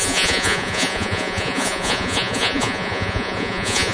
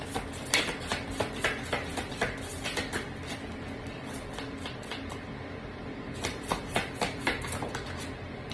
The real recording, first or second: second